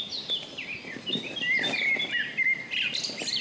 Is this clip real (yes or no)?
yes